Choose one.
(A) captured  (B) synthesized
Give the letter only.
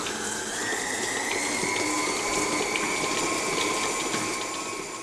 A